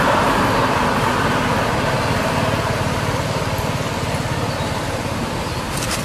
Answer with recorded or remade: recorded